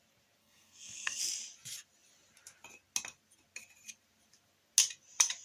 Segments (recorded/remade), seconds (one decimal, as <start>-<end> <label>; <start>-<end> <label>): 0.0-0.4 recorded; 0.4-1.2 remade; 1.2-5.4 recorded